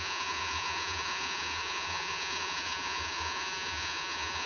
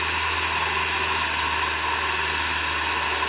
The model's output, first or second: first